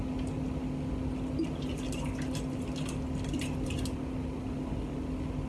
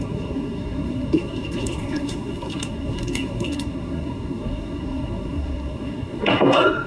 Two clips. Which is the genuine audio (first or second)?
first